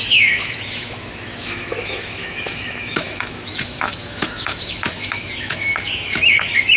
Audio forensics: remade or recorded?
remade